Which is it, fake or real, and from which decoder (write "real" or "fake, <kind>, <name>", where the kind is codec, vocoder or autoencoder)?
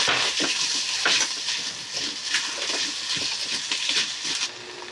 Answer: real